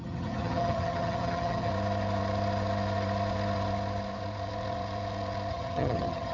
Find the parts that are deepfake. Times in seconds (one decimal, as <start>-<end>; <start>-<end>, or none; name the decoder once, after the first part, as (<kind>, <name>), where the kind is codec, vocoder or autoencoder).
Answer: 0.0-1.7 (vocoder, HiFi-GAN); 5.5-6.3